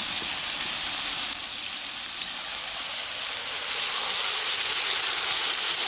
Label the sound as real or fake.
real